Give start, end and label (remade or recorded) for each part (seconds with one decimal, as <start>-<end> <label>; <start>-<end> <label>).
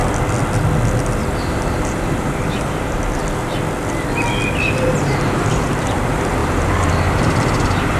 0.0-1.4 recorded; 1.4-3.2 remade; 3.2-4.9 recorded; 4.9-8.0 remade